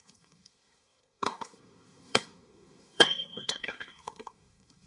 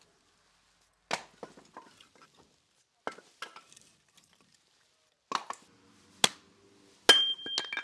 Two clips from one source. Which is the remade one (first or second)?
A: first